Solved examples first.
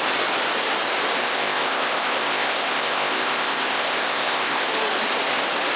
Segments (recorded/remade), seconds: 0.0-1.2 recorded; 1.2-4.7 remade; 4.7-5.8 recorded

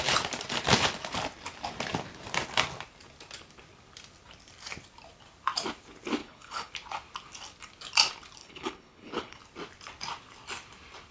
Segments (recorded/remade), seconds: 0.0-6.2 recorded; 6.2-6.7 remade; 6.7-8.4 recorded; 8.4-9.4 remade; 9.4-11.1 recorded

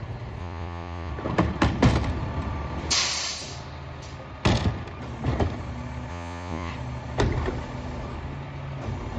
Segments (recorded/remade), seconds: 0.0-0.4 recorded; 0.4-1.1 remade; 1.1-6.1 recorded; 6.1-6.7 remade; 6.7-9.2 recorded

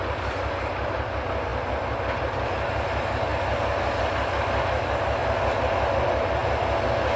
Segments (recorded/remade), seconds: 0.0-7.2 recorded

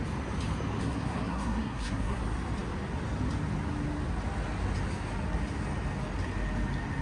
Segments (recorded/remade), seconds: 0.0-0.8 recorded; 0.8-2.2 remade; 2.2-7.0 recorded